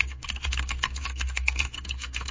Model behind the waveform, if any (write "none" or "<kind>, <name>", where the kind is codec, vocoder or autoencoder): codec, SNAC